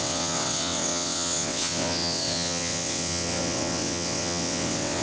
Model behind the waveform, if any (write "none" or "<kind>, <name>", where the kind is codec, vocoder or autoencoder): vocoder, WaveNeXt